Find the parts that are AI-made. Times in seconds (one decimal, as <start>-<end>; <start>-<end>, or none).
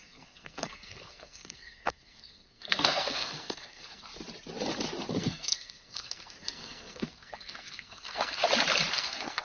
0.0-4.1; 5.1-8.4; 8.9-9.4